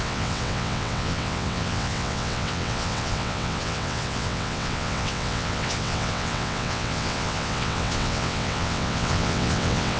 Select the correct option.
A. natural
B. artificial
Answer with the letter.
B